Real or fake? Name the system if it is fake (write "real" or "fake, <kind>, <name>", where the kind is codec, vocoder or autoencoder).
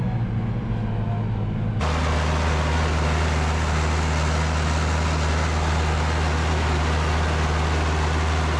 real